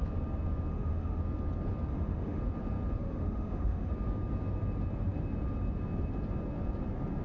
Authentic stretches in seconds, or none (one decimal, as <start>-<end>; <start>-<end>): 0.0-0.7; 1.2-1.9; 2.4-3.0; 3.9-7.2